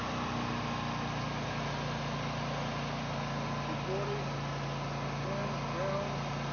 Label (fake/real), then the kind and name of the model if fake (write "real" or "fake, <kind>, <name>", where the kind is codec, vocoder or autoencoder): real